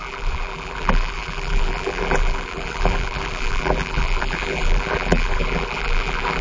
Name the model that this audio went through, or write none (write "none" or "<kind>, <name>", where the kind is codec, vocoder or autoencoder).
vocoder, BigVGAN v2